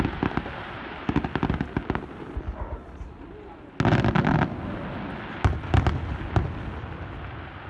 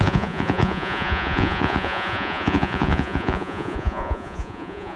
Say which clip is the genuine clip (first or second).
first